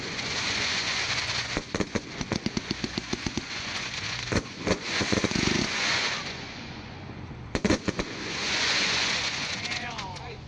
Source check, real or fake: fake